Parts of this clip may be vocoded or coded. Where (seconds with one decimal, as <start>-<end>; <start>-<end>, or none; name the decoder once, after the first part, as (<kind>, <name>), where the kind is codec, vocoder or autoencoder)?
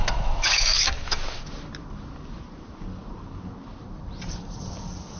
0.0-1.2 (autoencoder, DAC-VAE)